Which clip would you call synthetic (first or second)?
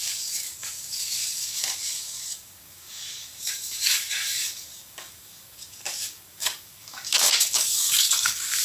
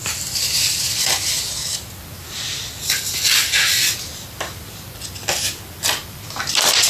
first